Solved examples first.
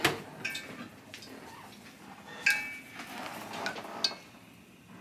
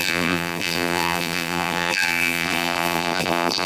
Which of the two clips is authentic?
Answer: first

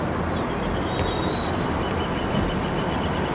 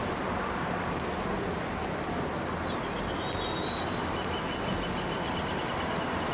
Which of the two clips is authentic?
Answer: second